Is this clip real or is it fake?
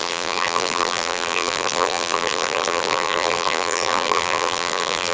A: fake